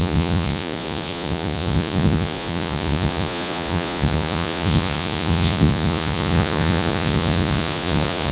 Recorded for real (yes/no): no